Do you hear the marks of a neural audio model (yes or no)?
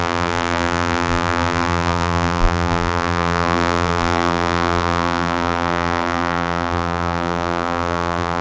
yes